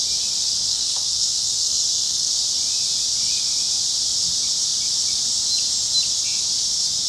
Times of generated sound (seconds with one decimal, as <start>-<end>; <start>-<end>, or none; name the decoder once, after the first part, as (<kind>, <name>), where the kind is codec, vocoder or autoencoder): 0.7-2.3 (codec, SNAC)